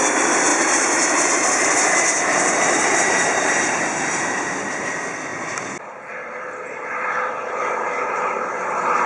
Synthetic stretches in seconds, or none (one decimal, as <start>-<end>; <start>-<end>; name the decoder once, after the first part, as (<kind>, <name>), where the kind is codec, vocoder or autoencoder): 0.5-4.6 (vocoder, BigVGAN v2)